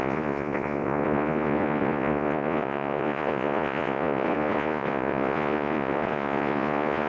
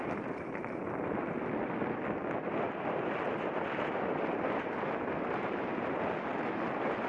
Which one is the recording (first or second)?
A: second